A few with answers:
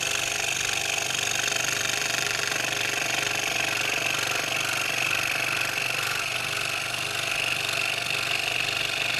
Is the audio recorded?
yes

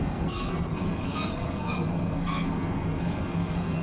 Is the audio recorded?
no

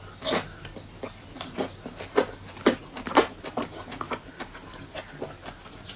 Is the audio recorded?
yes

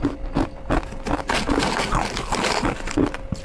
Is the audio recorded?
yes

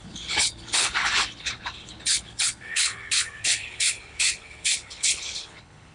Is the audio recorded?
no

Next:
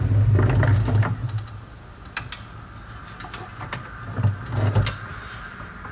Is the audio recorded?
yes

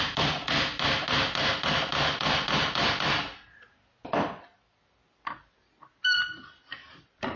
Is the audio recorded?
yes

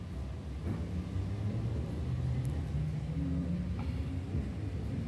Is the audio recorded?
yes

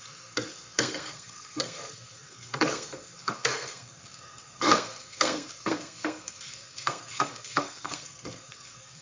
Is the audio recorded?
no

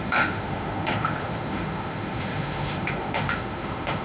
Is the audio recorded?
no